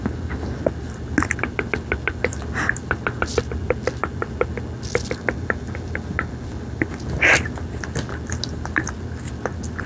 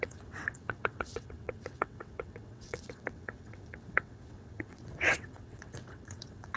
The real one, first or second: first